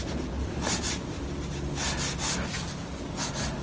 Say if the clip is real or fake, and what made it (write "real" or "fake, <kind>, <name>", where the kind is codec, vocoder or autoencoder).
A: real